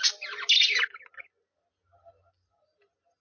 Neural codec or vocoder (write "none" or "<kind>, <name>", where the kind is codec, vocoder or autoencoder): none